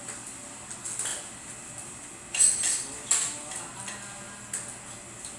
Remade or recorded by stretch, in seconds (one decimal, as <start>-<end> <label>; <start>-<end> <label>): 0.0-5.4 recorded